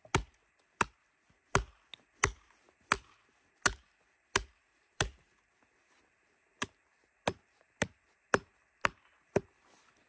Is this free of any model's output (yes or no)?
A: yes